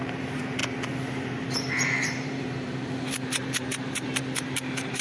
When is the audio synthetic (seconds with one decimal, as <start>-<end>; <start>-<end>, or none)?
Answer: 0.0-5.0